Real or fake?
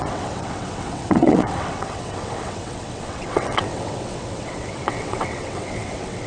fake